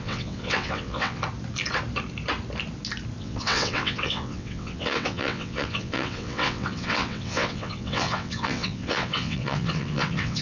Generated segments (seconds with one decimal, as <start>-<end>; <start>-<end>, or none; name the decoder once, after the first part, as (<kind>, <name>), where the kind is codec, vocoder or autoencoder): 0.0-1.2 (vocoder, WaveNeXt); 3.2-10.4